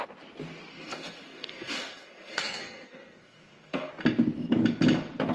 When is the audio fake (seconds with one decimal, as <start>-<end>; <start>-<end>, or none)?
0.7-3.9